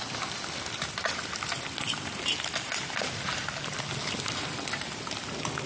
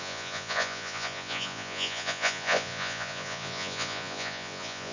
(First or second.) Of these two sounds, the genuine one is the first